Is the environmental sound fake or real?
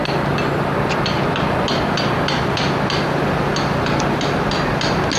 real